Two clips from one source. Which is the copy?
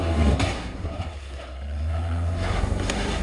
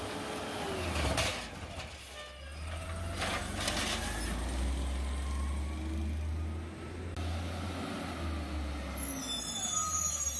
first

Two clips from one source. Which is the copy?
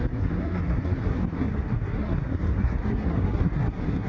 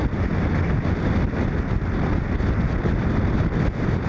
first